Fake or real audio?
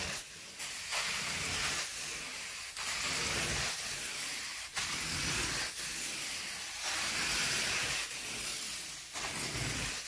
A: real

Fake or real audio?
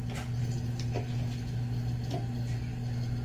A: real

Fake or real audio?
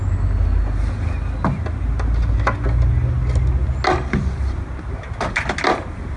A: real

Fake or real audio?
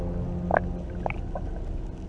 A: real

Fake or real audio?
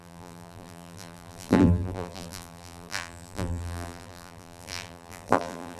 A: fake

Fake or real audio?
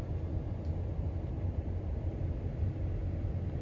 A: real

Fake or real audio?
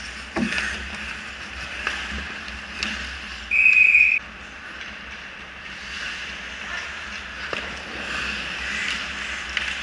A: real